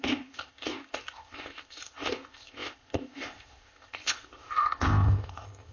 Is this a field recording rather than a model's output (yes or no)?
no